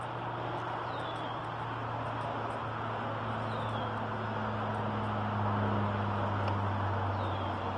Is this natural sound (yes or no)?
yes